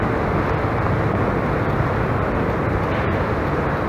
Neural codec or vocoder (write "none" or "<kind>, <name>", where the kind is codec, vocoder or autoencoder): none